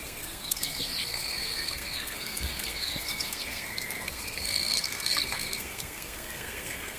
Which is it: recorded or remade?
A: remade